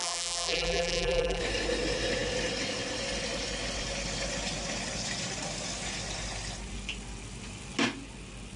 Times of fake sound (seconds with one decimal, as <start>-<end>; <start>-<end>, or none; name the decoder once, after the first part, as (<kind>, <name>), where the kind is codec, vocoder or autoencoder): 0.0-1.4 (vocoder, BigVGAN v2)